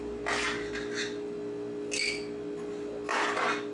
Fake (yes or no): no